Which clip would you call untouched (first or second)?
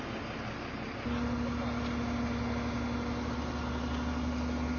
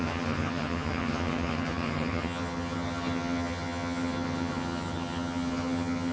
first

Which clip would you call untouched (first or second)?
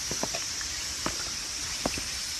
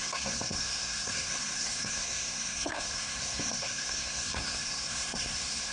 first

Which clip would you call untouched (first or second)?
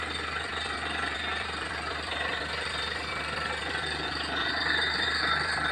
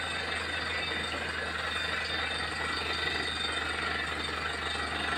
second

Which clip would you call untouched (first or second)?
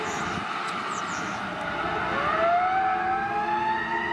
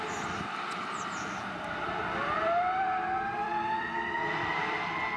first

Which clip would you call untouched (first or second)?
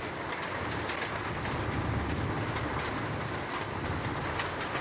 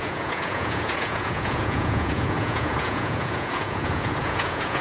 first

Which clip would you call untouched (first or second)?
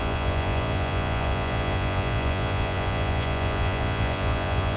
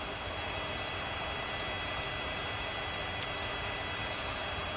second